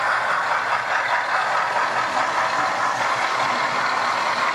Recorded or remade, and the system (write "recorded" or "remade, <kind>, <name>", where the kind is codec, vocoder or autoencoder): recorded